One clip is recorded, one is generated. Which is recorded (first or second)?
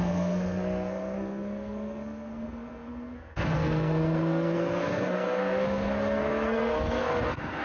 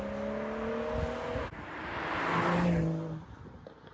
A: second